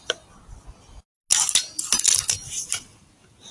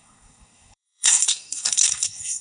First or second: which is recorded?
first